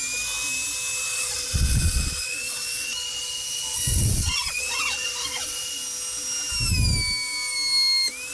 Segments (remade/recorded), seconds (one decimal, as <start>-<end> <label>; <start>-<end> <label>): 0.0-1.1 recorded; 1.1-5.8 remade; 5.8-8.3 recorded